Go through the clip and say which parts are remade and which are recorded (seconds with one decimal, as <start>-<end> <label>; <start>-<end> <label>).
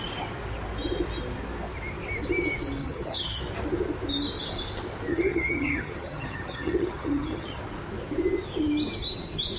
0.0-2.8 recorded; 2.8-3.4 remade; 3.4-5.1 recorded; 5.1-7.6 remade; 7.6-9.6 recorded